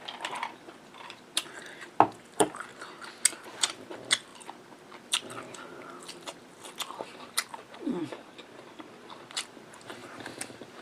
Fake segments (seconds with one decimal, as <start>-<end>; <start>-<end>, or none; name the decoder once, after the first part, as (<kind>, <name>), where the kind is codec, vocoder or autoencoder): 0.0-2.7 (vocoder, BigVGAN v2); 3.5-8.0; 9.3-10.8